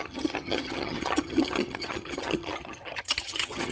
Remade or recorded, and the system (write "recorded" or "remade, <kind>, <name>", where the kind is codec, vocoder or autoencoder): remade, vocoder, HiFi-GAN